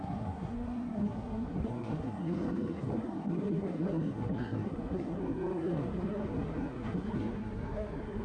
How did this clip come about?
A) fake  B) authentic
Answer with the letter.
A